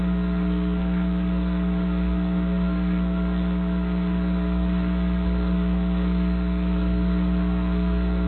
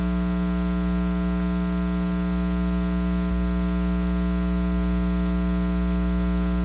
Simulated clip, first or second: first